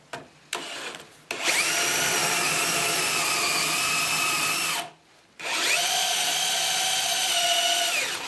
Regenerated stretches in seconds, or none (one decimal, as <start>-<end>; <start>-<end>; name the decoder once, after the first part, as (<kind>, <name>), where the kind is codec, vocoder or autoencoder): none